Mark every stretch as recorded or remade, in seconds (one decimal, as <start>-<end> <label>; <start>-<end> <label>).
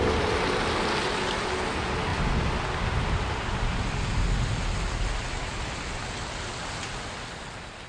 0.0-7.9 recorded